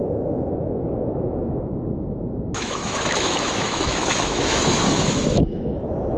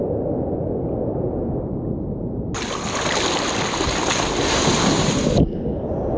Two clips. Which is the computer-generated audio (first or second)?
first